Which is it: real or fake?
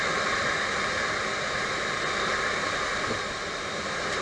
real